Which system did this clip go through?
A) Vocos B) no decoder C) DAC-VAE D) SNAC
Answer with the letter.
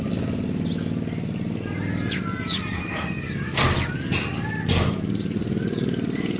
B